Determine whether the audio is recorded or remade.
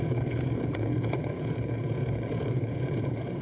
remade